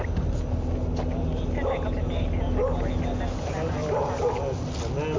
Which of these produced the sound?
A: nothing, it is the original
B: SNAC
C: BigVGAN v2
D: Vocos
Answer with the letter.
A